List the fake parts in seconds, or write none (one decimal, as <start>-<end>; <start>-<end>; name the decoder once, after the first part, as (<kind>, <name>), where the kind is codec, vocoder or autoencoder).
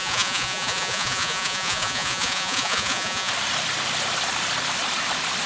0.0-3.3 (vocoder, Vocos)